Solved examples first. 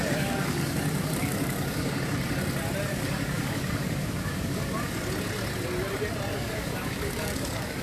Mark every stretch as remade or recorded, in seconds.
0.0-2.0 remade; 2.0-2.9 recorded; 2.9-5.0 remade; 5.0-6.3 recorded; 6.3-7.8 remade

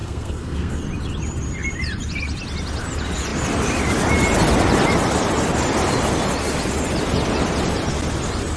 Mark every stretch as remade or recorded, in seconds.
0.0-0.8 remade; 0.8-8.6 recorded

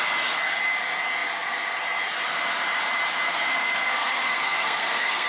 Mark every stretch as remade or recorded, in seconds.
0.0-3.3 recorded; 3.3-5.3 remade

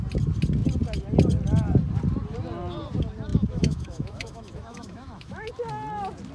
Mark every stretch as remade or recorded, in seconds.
0.0-3.3 recorded; 3.3-5.5 remade; 5.5-6.3 recorded

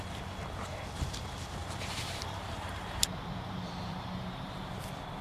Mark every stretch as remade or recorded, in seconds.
0.0-1.6 recorded; 1.6-4.7 remade; 4.7-5.2 recorded

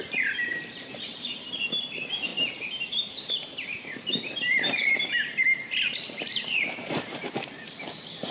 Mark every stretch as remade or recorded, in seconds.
0.0-8.3 remade

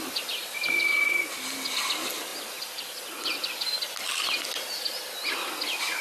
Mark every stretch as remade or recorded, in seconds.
0.0-6.0 recorded